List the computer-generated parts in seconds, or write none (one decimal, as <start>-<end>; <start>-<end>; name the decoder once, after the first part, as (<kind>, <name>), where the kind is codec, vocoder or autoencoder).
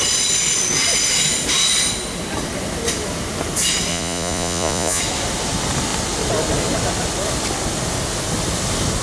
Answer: 3.9-5.0 (vocoder, Vocos)